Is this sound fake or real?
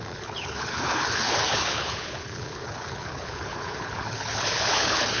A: fake